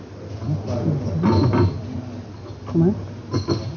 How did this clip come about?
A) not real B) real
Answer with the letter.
B